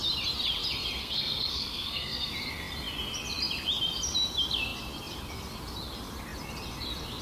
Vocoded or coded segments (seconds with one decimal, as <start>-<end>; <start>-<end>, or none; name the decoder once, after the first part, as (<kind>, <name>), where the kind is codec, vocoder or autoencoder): 1.0-2.3 (codec, SNAC)